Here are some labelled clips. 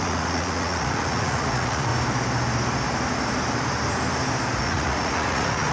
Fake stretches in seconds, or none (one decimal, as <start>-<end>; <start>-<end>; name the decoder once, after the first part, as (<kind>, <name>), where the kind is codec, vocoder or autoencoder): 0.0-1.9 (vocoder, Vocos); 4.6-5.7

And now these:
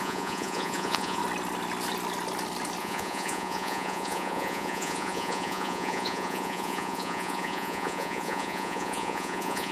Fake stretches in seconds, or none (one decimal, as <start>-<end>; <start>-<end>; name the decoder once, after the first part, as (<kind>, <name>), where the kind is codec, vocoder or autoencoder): 0.0-1.2 (vocoder, Vocos); 2.8-9.7

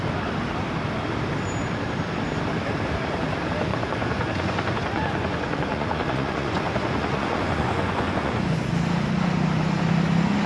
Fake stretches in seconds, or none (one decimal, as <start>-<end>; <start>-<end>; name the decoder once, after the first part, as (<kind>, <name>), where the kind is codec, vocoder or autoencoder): 3.7-8.7 (vocoder, Vocos)

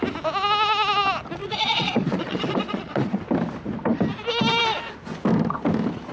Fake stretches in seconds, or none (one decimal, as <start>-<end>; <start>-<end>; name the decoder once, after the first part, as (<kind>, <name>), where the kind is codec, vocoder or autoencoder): 1.4-3.2 (vocoder, Vocos)

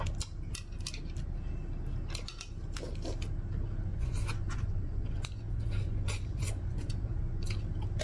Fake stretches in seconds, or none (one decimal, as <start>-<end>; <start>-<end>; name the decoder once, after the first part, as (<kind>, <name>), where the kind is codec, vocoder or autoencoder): 3.9-7.6 (vocoder, Vocos)

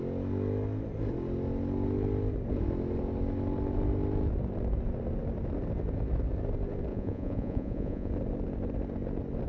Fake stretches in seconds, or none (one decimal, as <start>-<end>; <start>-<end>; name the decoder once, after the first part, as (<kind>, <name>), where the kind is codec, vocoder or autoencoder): 6.9-8.1 (vocoder, Vocos)

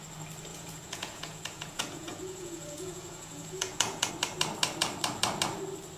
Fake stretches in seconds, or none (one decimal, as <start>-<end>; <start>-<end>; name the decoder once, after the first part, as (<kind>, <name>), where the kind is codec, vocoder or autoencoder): 0.5-4.1 (vocoder, Vocos)